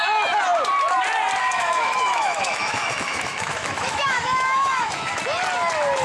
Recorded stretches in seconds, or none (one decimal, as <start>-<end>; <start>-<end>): 0.0-1.6; 5.2-6.0